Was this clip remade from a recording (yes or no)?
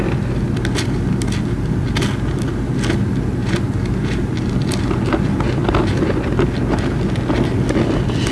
no